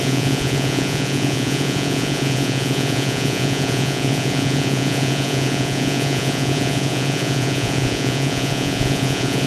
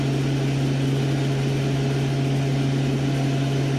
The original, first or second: second